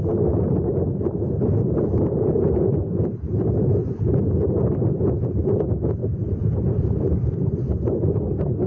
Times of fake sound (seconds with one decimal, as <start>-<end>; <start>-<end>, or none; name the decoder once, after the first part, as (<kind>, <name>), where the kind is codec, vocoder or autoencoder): none